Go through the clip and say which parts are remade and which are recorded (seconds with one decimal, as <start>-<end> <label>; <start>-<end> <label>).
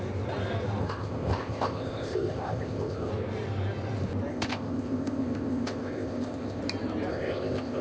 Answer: 0.0-0.8 recorded; 0.8-3.1 remade; 3.1-4.3 recorded; 4.3-6.6 remade; 6.6-7.1 recorded; 7.1-7.8 remade